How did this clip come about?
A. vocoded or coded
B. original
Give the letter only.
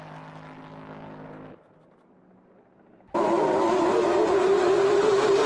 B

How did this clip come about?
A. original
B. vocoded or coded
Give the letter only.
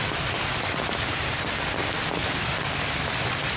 A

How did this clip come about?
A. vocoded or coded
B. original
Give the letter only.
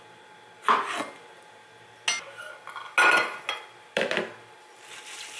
B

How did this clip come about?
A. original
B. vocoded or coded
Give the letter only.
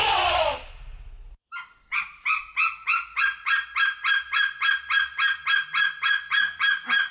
A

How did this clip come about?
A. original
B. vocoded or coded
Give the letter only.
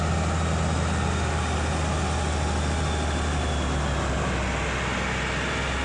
A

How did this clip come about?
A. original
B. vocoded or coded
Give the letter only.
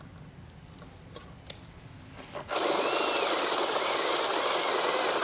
A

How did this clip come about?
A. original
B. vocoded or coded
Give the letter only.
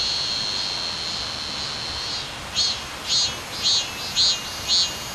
A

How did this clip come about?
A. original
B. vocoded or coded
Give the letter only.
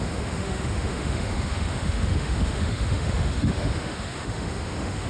B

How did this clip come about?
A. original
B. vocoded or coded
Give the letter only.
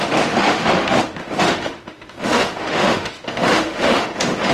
B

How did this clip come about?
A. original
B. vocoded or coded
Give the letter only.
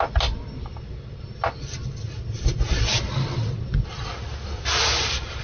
A